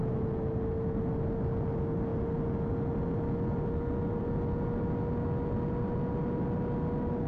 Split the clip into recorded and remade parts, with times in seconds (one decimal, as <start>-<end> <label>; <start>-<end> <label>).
0.0-7.3 recorded